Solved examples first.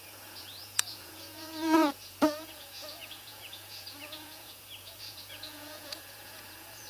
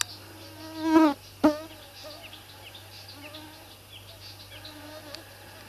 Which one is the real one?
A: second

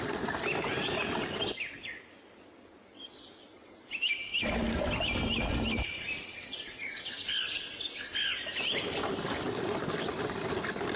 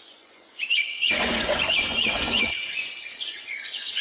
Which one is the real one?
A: first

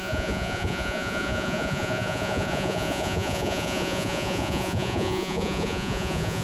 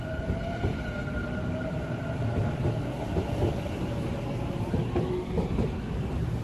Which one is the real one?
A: second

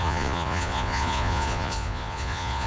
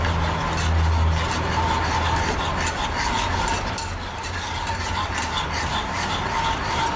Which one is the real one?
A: second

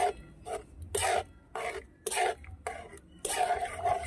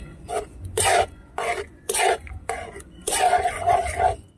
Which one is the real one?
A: first